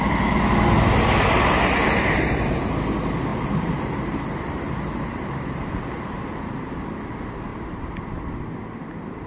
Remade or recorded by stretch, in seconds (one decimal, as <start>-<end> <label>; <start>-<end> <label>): 0.0-3.3 recorded; 3.3-6.8 remade; 6.8-7.5 recorded; 7.5-8.0 remade; 8.0-9.3 recorded